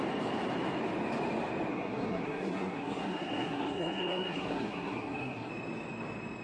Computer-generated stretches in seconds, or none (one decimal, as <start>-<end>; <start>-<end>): 1.7-5.5